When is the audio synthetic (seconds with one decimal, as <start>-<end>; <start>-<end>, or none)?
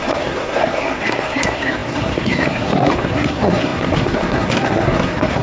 0.0-5.4